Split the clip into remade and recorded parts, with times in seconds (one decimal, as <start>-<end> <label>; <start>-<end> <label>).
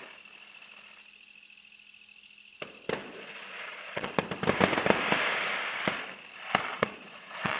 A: 0.0-3.0 recorded; 3.0-4.1 remade; 4.1-6.7 recorded; 6.7-7.6 remade